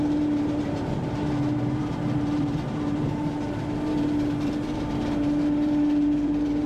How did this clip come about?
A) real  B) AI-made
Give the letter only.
B